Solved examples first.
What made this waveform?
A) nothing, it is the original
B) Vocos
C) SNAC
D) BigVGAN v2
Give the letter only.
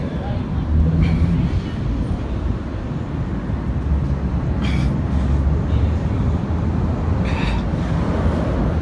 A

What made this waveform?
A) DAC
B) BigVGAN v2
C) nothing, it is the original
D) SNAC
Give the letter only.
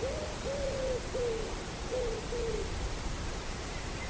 B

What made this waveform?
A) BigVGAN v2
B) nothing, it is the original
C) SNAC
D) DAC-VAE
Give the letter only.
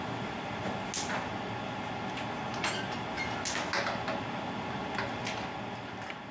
B